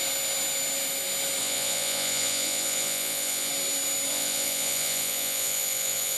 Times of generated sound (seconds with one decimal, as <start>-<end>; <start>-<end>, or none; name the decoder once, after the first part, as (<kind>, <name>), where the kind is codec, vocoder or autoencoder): 1.4-3.5 (vocoder, Vocos); 4.1-6.2